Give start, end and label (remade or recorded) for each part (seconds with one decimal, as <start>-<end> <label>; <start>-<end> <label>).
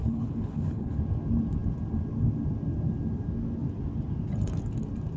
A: 0.0-1.0 remade; 1.0-5.2 recorded